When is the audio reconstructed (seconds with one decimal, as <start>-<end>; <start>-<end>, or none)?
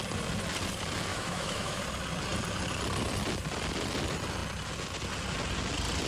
1.1-1.8